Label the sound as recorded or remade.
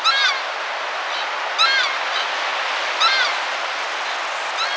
recorded